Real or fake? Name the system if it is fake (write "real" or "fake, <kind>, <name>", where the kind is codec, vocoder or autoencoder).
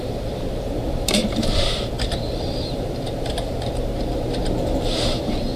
fake, vocoder, BigVGAN v2